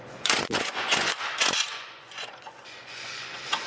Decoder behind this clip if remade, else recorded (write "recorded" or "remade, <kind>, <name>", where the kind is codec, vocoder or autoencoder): remade, vocoder, Vocos